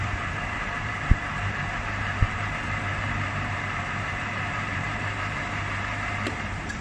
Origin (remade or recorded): remade